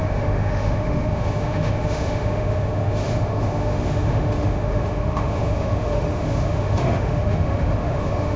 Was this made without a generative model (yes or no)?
no